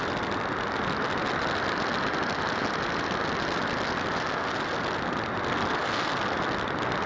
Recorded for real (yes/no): yes